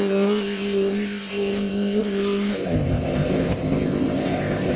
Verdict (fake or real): fake